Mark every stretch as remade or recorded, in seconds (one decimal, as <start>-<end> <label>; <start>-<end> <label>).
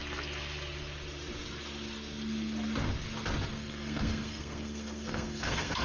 0.0-3.5 recorded; 3.5-5.8 remade